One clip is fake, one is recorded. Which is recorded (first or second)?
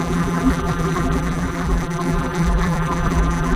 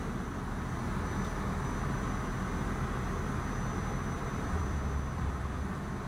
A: second